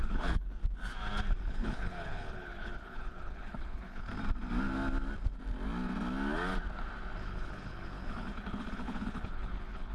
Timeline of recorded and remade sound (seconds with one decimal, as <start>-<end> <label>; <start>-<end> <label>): 0.0-0.6 remade; 0.6-1.4 recorded; 1.4-4.1 remade; 4.1-7.2 recorded; 7.2-9.9 remade